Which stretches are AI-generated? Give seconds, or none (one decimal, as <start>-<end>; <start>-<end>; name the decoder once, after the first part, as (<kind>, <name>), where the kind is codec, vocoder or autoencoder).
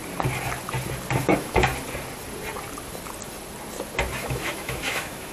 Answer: 1.2-1.7 (autoencoder, DAC-VAE); 4.2-5.3